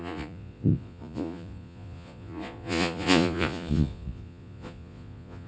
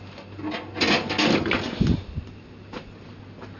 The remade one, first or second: first